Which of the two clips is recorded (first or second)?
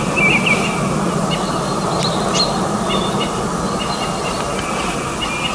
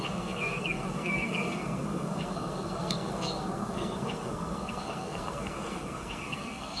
first